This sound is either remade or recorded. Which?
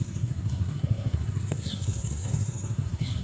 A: remade